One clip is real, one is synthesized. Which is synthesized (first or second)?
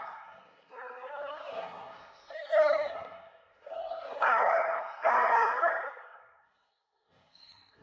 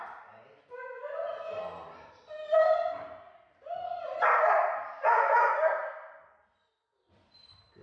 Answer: first